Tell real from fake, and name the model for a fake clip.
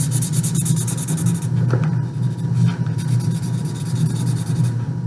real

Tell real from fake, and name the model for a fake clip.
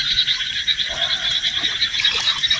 real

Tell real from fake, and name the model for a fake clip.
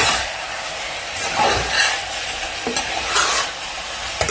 fake, vocoder, BigVGAN v2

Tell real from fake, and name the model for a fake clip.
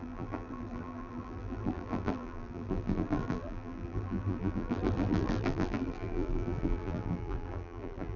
fake, vocoder, BigVGAN v2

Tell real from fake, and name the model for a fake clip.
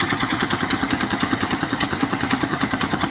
fake, vocoder, HiFi-GAN